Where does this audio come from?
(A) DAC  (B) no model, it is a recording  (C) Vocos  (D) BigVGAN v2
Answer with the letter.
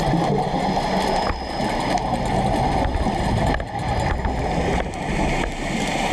B